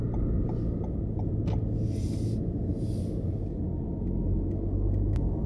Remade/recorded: recorded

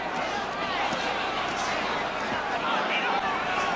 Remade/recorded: recorded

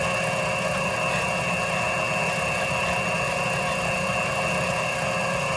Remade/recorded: recorded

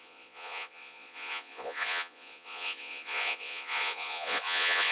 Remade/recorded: remade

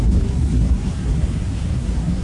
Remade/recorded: remade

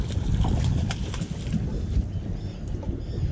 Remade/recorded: recorded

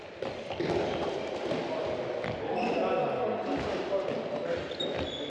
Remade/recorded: recorded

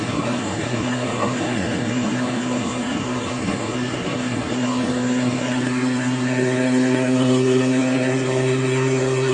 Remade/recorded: remade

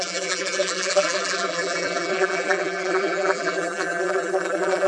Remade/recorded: remade